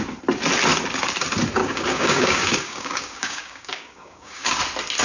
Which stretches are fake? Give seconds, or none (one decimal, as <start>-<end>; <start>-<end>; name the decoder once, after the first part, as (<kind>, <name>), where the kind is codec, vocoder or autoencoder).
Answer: 1.6-4.6 (codec, DAC)